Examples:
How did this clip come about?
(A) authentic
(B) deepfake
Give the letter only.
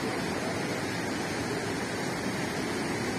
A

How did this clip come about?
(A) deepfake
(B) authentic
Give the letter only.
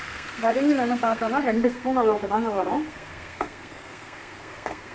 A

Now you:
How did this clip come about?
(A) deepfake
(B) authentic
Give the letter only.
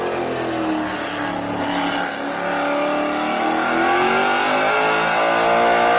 B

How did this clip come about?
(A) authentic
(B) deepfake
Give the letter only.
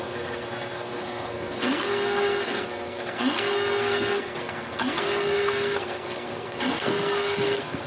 B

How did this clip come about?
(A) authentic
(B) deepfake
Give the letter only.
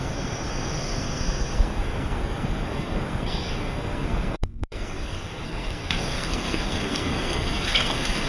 B